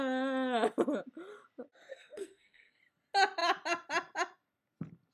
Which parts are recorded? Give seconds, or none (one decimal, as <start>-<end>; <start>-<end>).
0.0-1.9; 2.8-5.1